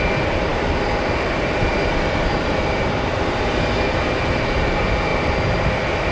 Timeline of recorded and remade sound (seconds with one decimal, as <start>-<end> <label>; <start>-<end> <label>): 0.0-6.1 recorded